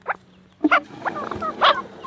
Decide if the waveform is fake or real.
real